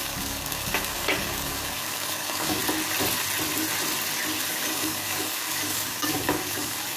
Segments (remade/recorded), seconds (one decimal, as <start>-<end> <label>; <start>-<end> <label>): 0.0-2.6 remade; 2.6-4.5 recorded; 4.5-7.0 remade